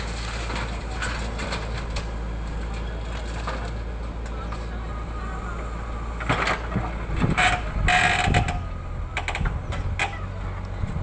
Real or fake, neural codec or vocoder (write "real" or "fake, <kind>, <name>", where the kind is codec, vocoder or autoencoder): real